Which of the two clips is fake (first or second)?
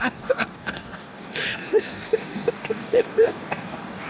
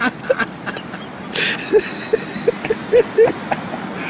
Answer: first